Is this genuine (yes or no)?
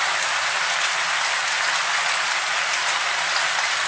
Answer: yes